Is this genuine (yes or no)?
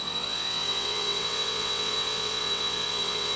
no